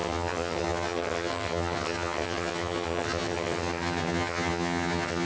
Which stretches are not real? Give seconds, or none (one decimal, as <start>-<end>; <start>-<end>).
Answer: 0.0-5.3